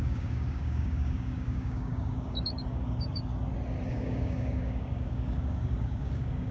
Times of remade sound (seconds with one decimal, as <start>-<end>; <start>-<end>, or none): 0.0-3.3; 3.9-6.5